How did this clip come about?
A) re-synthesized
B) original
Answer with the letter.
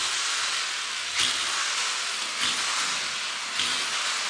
B